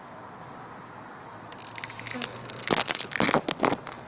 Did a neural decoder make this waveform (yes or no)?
no